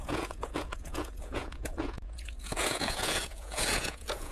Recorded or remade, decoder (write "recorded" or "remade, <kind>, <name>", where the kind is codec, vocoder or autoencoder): remade, vocoder, Vocos